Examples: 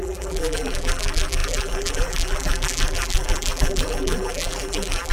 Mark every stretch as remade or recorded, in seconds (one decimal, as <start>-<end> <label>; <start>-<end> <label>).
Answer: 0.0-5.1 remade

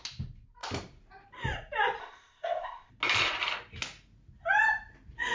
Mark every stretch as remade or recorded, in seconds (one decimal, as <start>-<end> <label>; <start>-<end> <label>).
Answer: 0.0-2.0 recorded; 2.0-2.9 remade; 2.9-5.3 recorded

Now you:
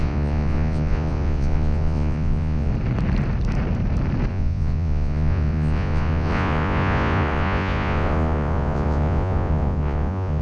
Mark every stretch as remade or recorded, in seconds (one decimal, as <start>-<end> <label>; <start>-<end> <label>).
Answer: 0.0-2.7 remade; 2.7-4.3 recorded; 4.3-10.4 remade